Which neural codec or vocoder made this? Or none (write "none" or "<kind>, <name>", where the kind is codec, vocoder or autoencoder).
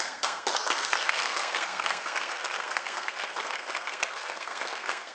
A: codec, SNAC